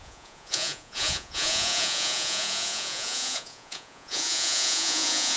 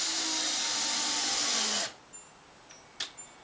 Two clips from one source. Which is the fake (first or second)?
first